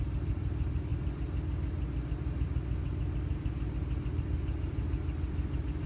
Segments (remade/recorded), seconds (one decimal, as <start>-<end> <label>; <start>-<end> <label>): 0.0-5.9 recorded